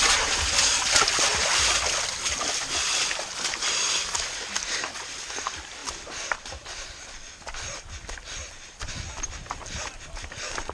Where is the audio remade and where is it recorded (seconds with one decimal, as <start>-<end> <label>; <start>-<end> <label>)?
0.0-10.7 recorded